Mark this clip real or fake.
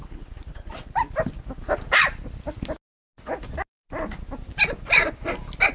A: real